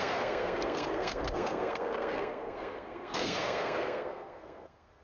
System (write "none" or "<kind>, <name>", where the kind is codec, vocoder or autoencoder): codec, SNAC